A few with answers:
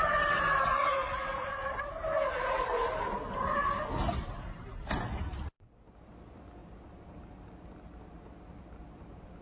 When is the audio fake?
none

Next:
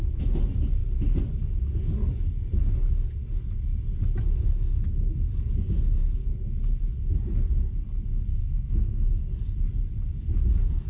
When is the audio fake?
8.4-9.1 (codec, SNAC)

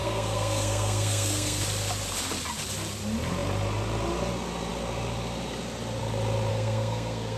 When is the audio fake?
0.0-1.6 (codec, SNAC); 6.5-7.4

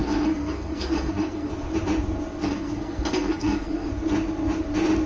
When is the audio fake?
0.0-1.5 (codec, SNAC); 2.4-3.9